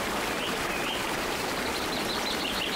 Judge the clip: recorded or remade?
recorded